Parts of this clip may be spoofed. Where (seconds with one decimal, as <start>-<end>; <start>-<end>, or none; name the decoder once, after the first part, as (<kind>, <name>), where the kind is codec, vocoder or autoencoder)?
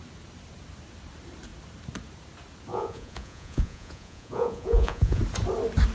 2.7-5.2 (vocoder, Vocos)